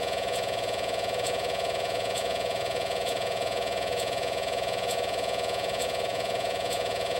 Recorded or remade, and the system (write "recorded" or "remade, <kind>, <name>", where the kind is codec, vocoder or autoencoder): remade, vocoder, Vocos